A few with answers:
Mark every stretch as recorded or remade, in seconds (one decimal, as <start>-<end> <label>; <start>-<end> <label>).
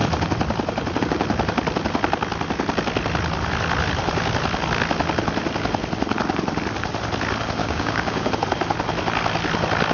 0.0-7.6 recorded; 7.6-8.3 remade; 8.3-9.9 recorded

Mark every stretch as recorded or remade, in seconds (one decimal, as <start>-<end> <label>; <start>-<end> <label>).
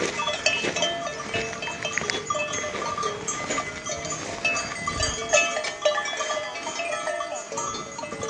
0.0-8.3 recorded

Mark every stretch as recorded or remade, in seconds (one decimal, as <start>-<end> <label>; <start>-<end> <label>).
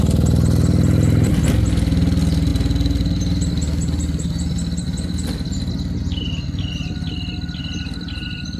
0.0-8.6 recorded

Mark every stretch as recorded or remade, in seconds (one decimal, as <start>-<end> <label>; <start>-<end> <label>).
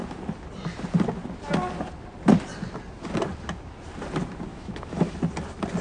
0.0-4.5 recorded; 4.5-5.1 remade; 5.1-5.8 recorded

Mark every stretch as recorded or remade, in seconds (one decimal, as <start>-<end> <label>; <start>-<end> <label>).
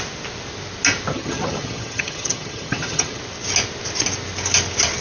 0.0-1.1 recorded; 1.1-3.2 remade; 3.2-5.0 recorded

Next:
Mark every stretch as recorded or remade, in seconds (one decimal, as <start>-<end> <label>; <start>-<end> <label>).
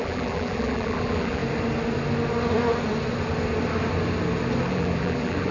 0.0-1.4 remade; 1.4-4.7 recorded; 4.7-5.5 remade